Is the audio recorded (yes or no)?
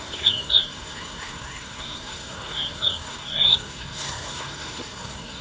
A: no